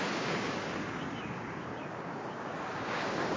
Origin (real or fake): fake